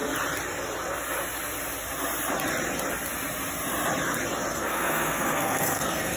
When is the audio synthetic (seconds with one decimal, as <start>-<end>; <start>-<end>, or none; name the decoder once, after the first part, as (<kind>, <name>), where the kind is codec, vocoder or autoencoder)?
4.5-6.2 (codec, SNAC)